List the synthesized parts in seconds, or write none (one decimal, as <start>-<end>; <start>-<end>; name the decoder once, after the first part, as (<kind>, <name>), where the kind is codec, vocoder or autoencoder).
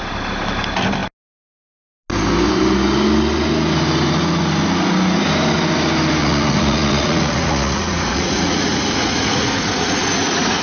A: 6.2-10.6 (vocoder, Vocos)